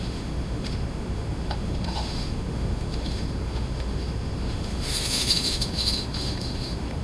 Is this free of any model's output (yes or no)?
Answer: no